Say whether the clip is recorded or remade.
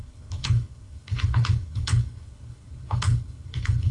remade